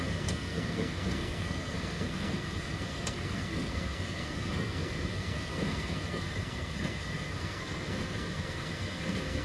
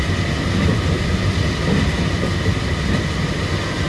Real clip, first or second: second